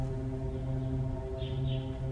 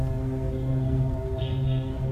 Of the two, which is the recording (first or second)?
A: first